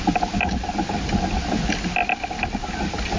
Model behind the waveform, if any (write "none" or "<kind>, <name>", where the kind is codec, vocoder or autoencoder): none